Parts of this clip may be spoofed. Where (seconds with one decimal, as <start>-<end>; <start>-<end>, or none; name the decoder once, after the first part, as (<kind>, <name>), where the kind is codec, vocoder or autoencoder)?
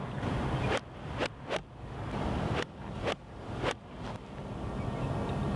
none